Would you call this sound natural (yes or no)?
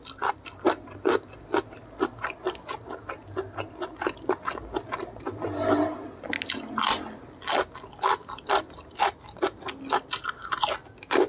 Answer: yes